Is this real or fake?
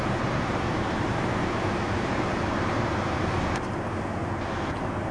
real